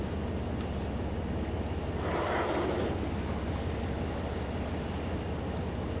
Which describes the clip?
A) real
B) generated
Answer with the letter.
A